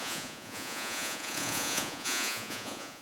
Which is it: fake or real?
fake